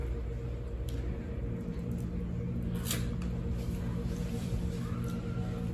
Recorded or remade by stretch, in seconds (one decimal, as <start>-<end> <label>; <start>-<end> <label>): 0.0-4.2 recorded; 4.2-4.8 remade; 4.8-5.7 recorded